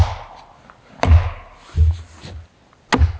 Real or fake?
real